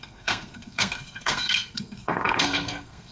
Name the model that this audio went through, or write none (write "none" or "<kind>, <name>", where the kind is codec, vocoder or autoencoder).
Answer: codec, SNAC